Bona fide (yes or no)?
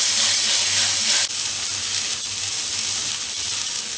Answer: yes